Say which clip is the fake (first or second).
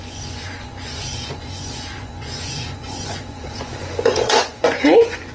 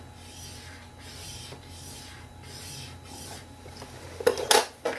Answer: first